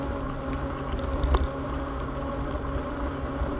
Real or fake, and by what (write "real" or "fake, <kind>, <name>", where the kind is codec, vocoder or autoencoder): real